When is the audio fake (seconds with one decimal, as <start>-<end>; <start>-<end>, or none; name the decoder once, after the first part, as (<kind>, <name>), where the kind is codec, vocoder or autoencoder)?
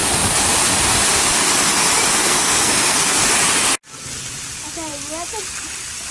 2.2-3.2 (codec, SNAC)